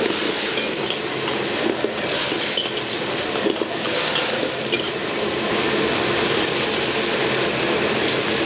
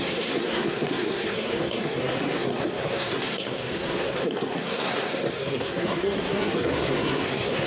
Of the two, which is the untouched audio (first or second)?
first